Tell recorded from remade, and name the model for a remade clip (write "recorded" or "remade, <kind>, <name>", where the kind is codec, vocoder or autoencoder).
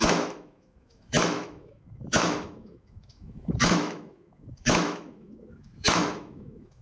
remade, autoencoder, DAC-VAE